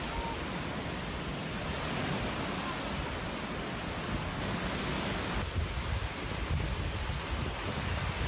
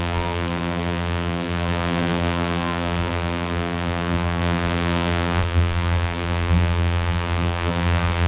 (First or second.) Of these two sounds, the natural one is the first